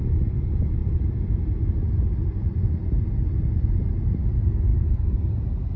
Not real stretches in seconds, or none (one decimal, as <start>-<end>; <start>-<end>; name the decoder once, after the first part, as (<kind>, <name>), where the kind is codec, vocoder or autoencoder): none